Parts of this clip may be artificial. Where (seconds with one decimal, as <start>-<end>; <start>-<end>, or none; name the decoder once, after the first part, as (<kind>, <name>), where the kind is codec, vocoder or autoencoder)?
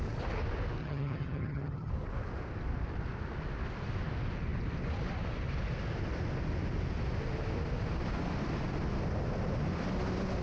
0.8-1.9 (vocoder, HiFi-GAN)